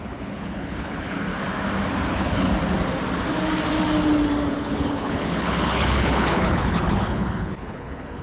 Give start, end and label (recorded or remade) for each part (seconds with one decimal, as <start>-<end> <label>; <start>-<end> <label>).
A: 0.0-1.3 remade; 1.3-2.1 recorded; 2.1-2.5 remade; 2.5-4.5 recorded; 4.5-8.2 remade